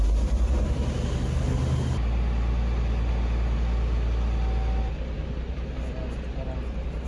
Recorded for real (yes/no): yes